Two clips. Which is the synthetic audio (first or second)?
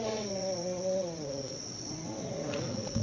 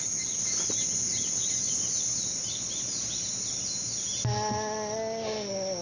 first